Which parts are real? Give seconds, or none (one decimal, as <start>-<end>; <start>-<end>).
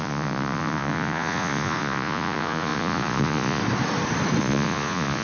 3.6-4.4